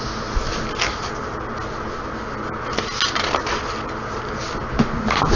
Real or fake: real